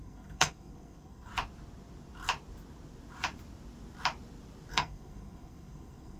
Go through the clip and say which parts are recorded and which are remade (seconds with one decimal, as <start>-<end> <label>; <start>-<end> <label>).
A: 0.0-1.3 remade; 1.3-4.7 recorded; 4.7-6.2 remade